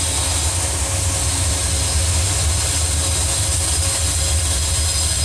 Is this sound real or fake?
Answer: real